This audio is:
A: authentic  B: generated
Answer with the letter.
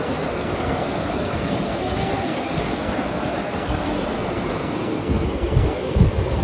B